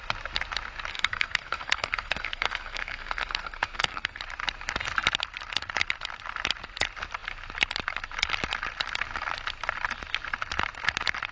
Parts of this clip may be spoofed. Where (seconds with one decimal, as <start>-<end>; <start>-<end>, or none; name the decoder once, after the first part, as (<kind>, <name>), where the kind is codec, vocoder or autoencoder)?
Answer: 0.9-4.2 (codec, SNAC)